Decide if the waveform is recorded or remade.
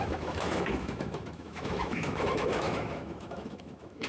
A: remade